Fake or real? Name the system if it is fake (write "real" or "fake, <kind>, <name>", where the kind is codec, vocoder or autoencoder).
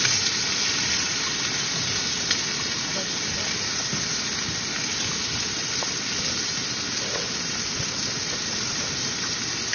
real